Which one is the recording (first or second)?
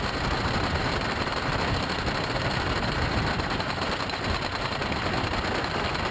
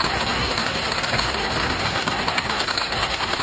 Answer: first